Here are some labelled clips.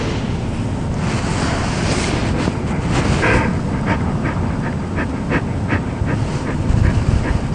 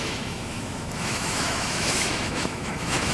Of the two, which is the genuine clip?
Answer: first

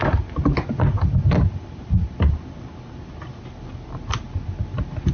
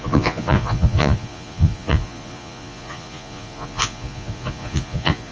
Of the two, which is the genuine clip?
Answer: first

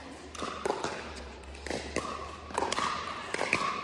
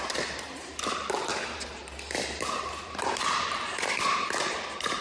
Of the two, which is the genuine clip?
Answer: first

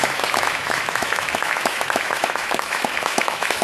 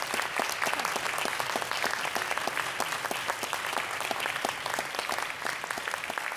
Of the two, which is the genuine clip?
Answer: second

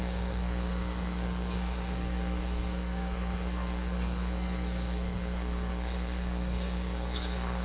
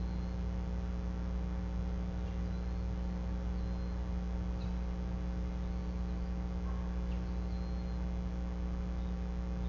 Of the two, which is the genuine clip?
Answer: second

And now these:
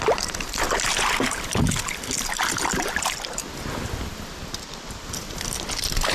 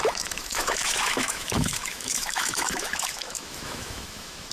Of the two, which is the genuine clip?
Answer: first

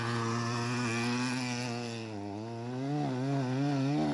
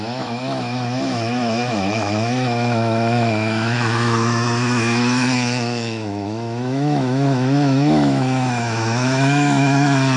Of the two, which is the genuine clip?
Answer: first